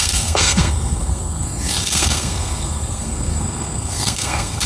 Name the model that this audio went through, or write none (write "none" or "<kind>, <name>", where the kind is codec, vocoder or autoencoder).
codec, SNAC